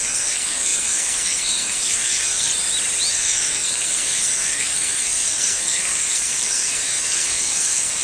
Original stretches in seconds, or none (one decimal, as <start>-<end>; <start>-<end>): 2.5-3.1